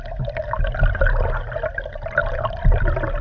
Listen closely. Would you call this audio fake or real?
real